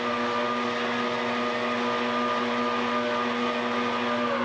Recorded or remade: recorded